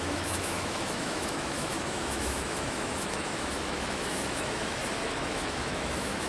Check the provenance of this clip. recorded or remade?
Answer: remade